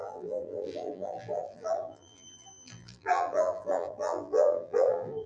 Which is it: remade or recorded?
remade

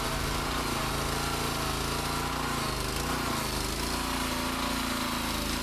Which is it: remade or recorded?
recorded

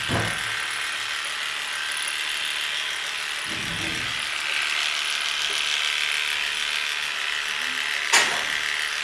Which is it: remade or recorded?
recorded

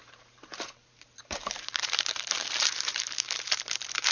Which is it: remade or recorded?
remade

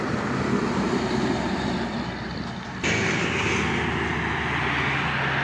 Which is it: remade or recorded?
recorded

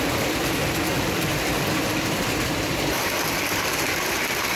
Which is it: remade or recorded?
remade